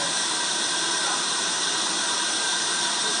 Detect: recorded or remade remade